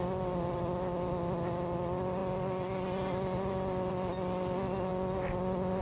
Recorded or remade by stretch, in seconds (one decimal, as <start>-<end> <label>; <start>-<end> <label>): 0.0-5.8 recorded